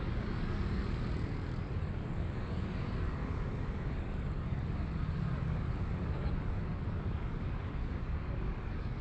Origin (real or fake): fake